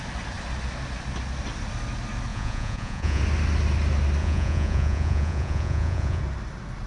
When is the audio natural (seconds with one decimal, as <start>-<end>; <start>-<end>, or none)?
0.0-2.3; 3.2-4.2; 6.2-6.9